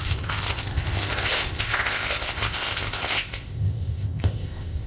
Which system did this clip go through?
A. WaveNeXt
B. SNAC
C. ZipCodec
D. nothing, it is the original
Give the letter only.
C